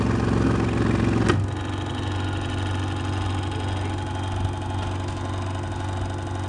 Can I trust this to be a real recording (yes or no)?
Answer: yes